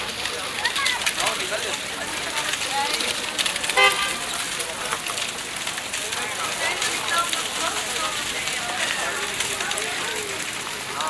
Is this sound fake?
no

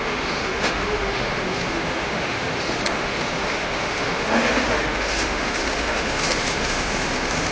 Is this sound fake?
yes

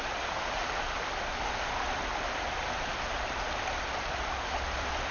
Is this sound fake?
no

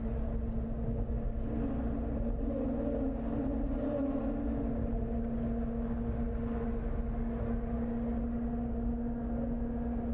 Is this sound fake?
no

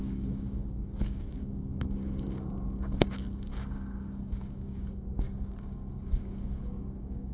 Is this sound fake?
yes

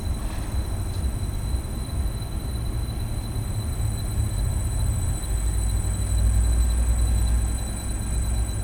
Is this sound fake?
no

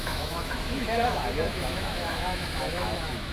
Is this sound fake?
yes